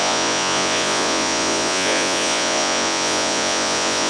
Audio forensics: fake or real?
fake